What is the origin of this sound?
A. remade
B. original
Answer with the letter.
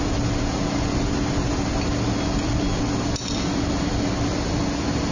B